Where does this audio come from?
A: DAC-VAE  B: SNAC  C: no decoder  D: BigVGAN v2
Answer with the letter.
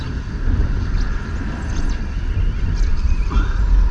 C